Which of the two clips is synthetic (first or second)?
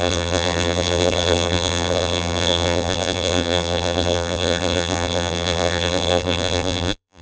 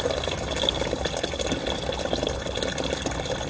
first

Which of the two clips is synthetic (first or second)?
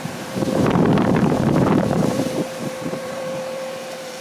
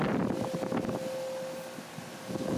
first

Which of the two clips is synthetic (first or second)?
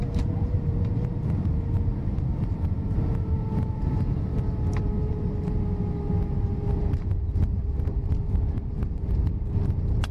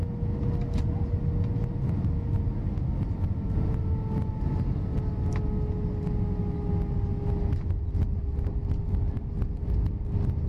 first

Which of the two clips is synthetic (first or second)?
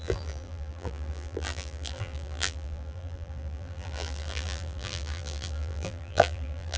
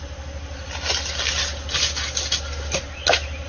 first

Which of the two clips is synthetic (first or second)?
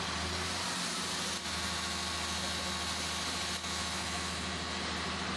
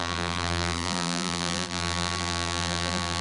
second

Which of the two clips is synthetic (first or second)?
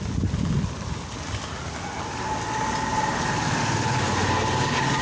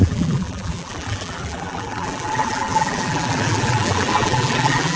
second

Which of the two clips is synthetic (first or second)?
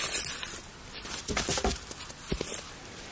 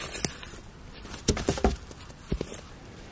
second